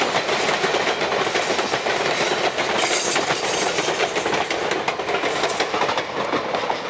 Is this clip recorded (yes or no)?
yes